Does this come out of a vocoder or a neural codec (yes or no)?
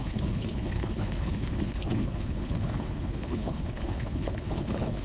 yes